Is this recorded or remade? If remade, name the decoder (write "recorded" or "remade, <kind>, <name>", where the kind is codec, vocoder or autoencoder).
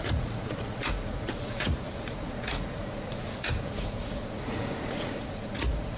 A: remade, vocoder, Vocos